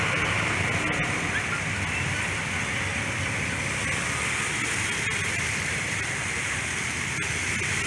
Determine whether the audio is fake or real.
real